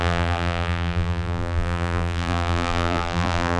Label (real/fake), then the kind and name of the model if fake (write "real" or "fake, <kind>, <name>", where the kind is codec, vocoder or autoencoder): fake, vocoder, BigVGAN v2